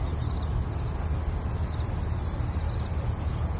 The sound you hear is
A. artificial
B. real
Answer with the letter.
B